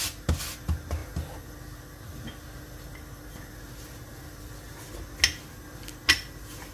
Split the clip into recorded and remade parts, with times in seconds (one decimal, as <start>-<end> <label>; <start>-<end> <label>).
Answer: 0.0-6.7 recorded